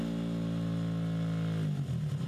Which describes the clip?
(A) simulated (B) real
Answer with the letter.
B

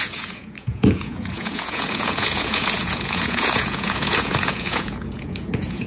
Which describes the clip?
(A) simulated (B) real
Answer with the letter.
A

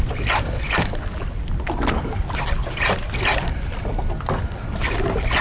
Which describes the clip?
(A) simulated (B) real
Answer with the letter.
B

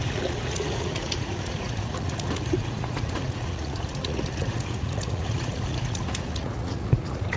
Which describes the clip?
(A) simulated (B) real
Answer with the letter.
A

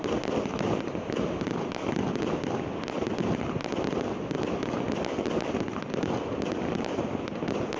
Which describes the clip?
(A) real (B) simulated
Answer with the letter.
A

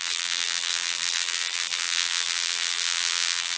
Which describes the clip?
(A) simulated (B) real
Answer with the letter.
A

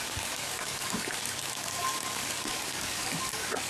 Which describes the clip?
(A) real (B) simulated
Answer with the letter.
B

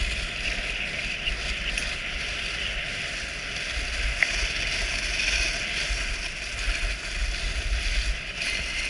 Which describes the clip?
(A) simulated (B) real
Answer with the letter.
B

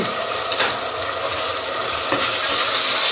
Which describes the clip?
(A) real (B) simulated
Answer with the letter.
A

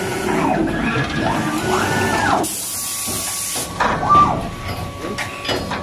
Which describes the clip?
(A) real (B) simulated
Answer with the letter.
A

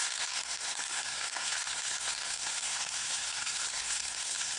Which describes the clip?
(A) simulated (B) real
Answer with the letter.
A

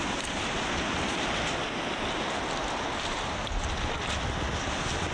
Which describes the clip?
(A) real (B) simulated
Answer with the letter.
A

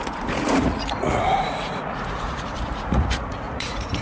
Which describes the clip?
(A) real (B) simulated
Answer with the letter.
B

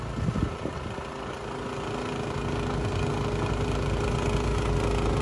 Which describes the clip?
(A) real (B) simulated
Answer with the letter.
A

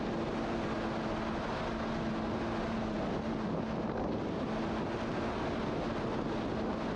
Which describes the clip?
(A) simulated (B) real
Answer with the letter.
B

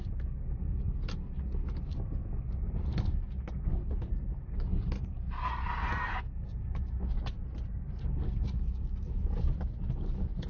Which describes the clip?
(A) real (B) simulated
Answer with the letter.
A